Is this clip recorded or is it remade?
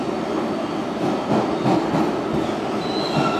recorded